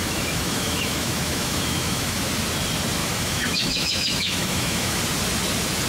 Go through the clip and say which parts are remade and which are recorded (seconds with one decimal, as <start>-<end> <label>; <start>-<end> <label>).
0.0-2.3 remade; 2.3-3.0 recorded; 3.0-5.0 remade; 5.0-5.9 recorded

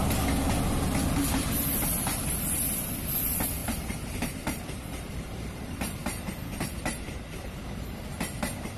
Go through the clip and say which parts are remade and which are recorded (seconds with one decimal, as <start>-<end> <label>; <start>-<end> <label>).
0.0-3.6 recorded; 3.6-8.4 remade; 8.4-8.8 recorded

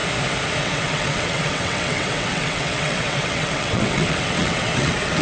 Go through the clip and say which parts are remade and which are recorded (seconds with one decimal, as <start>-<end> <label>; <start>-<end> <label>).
0.0-0.6 recorded; 0.6-5.2 remade

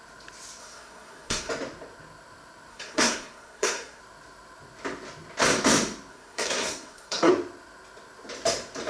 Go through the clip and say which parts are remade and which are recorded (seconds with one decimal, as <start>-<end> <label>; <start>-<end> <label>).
0.0-0.6 recorded; 0.6-1.5 remade; 1.5-2.7 recorded; 2.7-4.0 remade; 4.0-6.1 recorded; 6.1-7.3 remade; 7.3-8.9 recorded

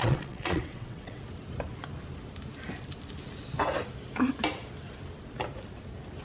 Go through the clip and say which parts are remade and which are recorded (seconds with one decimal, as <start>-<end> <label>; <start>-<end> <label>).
0.0-1.2 remade; 1.2-6.2 recorded

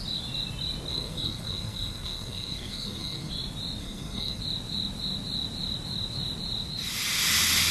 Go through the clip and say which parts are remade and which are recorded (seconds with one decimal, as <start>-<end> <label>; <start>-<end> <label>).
0.0-0.9 recorded; 0.9-3.3 remade; 3.3-3.8 recorded; 3.8-4.4 remade; 4.4-7.7 recorded

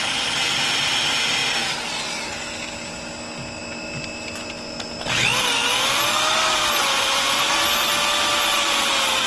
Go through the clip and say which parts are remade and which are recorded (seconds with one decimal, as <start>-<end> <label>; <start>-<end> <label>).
0.0-6.8 recorded; 6.8-7.4 remade; 7.4-9.3 recorded

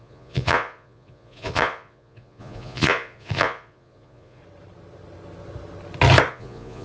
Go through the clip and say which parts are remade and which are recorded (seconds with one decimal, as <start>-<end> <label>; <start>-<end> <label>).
0.0-4.4 remade; 4.4-6.3 recorded; 6.3-6.8 remade